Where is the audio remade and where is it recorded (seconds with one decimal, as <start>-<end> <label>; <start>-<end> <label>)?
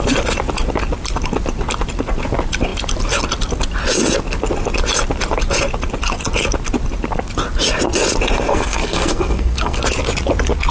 0.0-8.5 recorded; 8.5-9.8 remade; 9.8-10.7 recorded